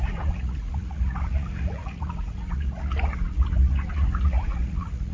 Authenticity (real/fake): fake